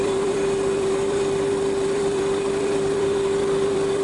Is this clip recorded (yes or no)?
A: no